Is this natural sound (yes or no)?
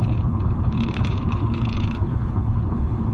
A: no